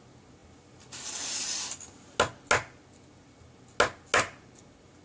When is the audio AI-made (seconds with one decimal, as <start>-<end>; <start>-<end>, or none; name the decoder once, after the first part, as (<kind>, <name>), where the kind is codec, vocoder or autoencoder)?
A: none